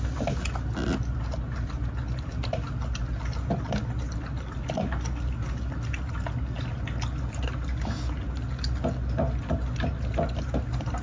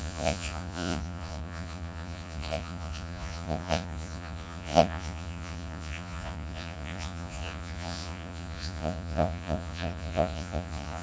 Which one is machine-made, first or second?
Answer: second